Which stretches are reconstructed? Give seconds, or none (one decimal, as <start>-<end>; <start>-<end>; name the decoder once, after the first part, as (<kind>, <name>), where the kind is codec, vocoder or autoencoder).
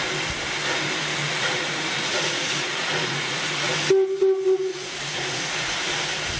1.2-3.7 (vocoder, Vocos); 4.7-5.8